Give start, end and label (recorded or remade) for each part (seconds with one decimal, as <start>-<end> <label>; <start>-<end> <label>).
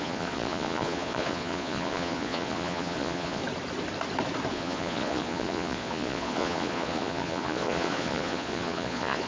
0.0-3.4 remade; 3.4-4.5 recorded; 4.5-9.3 remade